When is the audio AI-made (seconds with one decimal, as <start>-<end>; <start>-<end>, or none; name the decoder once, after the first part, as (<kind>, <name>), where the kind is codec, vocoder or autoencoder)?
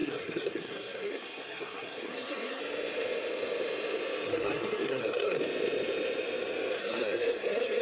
0.0-2.6 (codec, SNAC); 4.3-5.4; 6.8-7.8